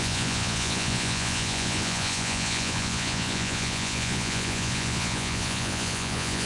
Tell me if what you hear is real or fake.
fake